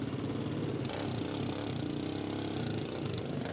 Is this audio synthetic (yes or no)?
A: no